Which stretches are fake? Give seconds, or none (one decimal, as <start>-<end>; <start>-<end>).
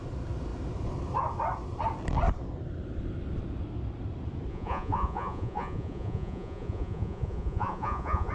4.5-8.3